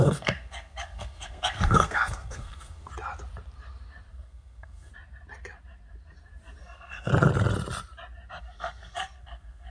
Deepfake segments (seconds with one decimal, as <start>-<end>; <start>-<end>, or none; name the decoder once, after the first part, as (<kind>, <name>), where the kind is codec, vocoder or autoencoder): 0.0-2.9 (codec, SNAC); 4.1-4.9; 6.6-7.1; 8.4-9.7